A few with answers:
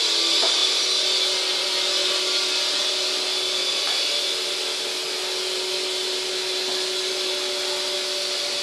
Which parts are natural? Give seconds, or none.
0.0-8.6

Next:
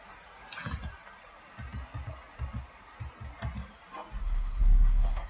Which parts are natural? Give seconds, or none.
0.0-4.2

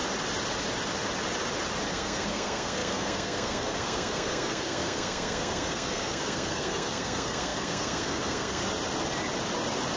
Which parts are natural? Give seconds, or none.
0.0-1.9; 8.6-10.0

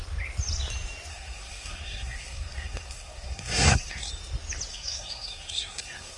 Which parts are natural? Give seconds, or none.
0.0-1.1; 4.1-4.7

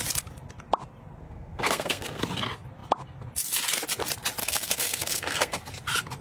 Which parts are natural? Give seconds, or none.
0.0-1.2; 2.2-4.4; 5.6-6.2

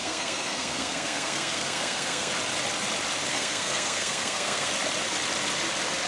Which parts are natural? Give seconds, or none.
2.3-3.3; 4.7-6.1

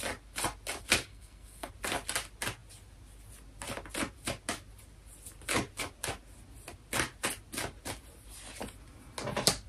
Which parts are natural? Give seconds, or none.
0.0-1.1; 1.7-9.7